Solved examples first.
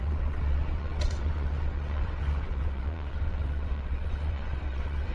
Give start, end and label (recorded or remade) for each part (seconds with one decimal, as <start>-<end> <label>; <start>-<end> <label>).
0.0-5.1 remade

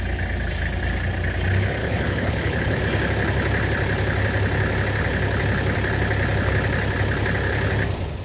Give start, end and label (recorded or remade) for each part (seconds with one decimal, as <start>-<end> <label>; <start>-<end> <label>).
0.0-1.8 recorded; 1.8-2.8 remade; 2.8-8.2 recorded

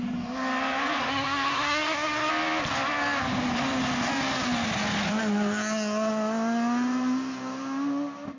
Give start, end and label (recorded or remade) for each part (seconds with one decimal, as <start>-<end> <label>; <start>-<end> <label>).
0.0-1.0 recorded; 1.0-2.3 remade; 2.3-8.4 recorded

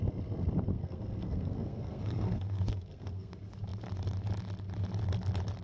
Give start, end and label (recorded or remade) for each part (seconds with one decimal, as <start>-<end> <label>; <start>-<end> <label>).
0.0-0.7 recorded; 0.7-3.3 remade; 3.3-5.6 recorded